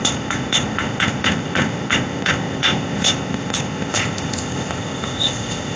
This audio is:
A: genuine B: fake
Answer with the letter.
B